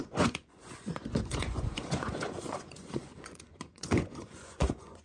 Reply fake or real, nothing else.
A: fake